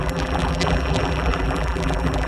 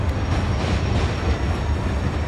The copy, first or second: first